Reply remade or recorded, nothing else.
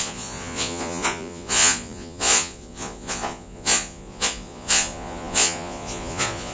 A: remade